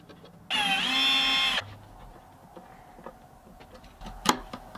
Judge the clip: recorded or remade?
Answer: recorded